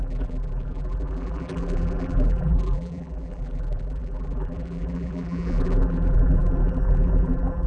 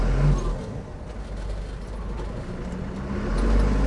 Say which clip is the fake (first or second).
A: first